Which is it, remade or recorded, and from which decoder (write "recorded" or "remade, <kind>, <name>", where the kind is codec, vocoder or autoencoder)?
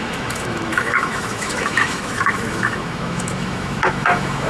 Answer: remade, autoencoder, DAC-VAE